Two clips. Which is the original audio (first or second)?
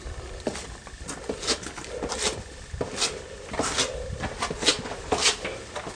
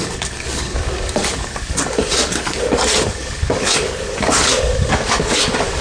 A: first